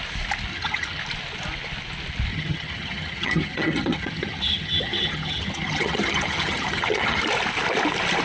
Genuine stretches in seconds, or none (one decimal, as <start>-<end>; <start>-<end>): 0.0-0.5; 1.0-2.3; 7.2-8.2

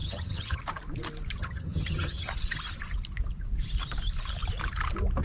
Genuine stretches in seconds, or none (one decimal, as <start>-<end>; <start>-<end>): 0.6-1.4; 2.3-5.2

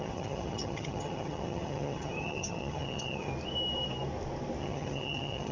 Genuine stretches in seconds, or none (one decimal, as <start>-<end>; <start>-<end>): 3.3-4.6

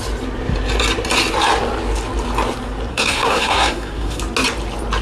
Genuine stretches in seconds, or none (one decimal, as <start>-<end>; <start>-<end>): 0.0-2.9; 4.2-5.0